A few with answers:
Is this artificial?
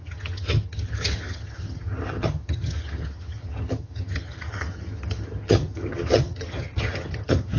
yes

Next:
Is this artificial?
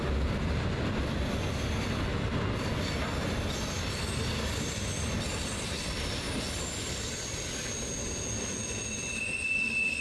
no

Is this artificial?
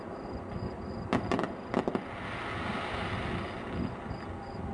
no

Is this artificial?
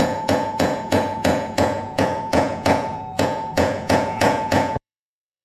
yes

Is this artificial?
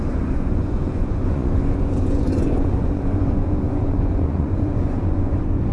yes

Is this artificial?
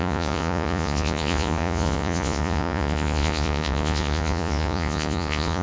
yes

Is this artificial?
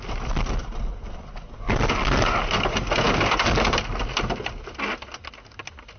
no